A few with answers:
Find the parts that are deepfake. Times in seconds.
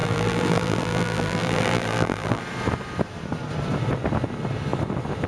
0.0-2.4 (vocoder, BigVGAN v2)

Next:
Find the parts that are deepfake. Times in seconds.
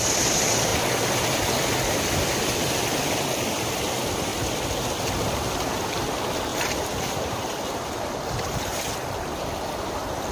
6.5-8.9 (vocoder, BigVGAN v2)